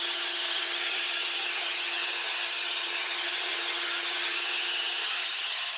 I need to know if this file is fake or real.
fake